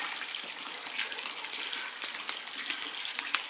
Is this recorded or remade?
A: recorded